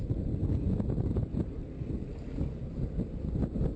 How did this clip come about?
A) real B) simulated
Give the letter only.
A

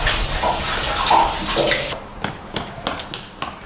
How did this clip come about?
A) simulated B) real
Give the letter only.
B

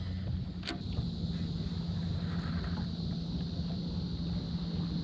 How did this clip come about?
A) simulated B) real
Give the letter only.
B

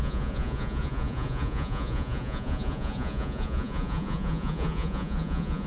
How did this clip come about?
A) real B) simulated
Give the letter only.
B